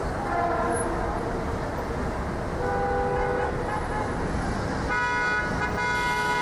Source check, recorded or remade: recorded